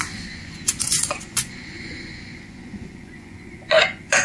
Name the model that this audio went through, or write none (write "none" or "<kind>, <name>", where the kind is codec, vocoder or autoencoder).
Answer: vocoder, Vocos